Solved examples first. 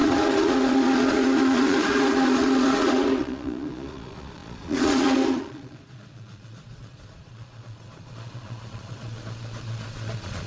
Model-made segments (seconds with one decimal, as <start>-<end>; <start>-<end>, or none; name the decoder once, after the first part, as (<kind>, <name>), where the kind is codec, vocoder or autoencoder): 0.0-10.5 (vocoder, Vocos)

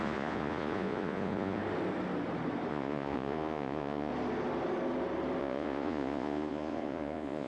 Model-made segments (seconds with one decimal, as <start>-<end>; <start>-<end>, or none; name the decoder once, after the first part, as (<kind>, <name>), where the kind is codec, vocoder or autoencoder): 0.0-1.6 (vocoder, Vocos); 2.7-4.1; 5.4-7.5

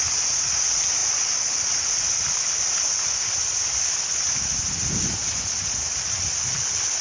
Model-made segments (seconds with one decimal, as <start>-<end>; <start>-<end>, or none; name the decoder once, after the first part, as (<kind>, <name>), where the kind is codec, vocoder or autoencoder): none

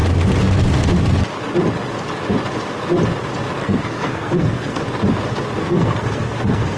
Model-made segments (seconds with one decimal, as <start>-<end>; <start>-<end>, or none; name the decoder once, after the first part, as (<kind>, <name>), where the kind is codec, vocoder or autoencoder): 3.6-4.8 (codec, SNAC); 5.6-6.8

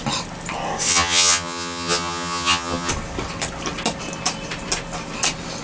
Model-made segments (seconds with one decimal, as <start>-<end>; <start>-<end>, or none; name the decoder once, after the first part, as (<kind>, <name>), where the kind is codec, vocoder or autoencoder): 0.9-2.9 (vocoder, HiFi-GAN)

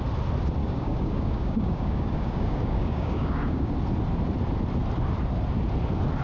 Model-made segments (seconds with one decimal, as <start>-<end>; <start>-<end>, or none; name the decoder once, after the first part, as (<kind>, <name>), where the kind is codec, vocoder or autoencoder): 0.6-3.7 (codec, DAC)